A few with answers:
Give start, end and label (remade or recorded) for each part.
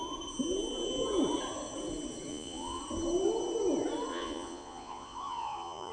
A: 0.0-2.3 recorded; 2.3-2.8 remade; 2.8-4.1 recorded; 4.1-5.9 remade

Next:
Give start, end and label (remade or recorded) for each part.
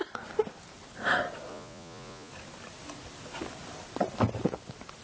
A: 0.0-1.5 recorded; 1.5-2.3 remade; 2.3-5.0 recorded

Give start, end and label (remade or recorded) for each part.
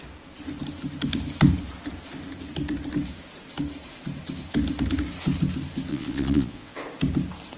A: 0.0-5.9 recorded; 5.9-6.8 remade; 6.8-7.6 recorded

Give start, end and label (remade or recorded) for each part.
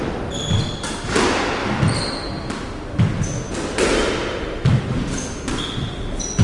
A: 0.0-6.4 recorded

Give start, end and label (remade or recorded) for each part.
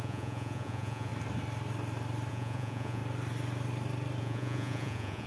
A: 0.0-1.1 remade; 1.1-2.3 recorded; 2.3-3.0 remade; 3.0-4.2 recorded; 4.2-5.3 remade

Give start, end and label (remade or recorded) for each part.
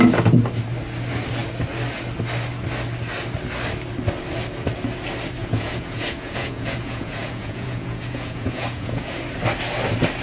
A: 0.0-5.4 recorded; 5.4-9.2 remade; 9.2-10.2 recorded